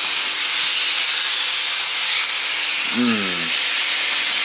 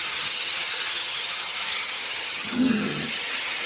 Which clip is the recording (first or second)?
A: first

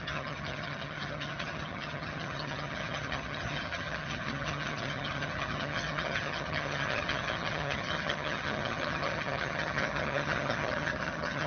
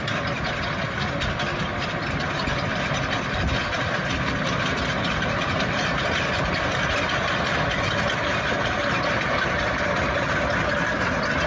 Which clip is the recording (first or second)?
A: second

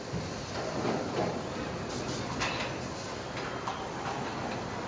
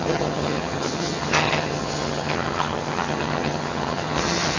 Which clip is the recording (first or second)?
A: first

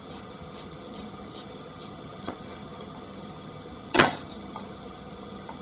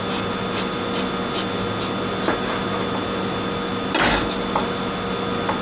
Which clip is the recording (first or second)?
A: second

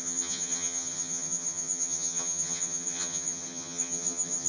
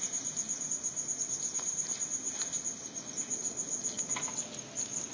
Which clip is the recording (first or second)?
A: second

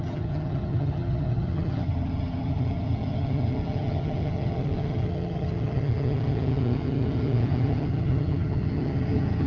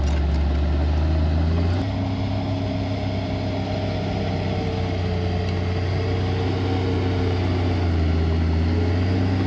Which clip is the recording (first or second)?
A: second